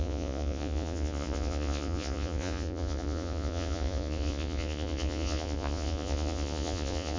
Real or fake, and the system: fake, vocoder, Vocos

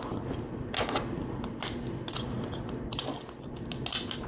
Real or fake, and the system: real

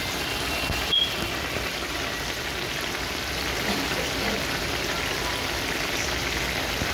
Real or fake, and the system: real